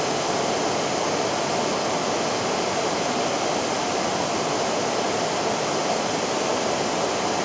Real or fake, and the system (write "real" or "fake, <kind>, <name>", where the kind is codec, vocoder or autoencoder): real